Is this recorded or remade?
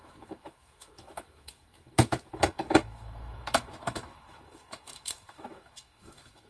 remade